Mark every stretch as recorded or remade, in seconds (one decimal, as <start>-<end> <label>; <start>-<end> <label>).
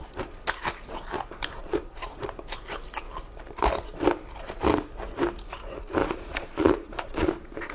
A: 0.0-1.6 recorded; 1.6-2.2 remade; 2.2-6.0 recorded; 6.0-7.7 remade